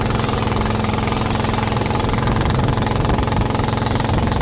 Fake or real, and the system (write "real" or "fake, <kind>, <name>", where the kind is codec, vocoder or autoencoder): real